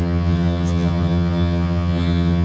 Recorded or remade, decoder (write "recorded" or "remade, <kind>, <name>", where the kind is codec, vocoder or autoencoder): remade, vocoder, HiFi-GAN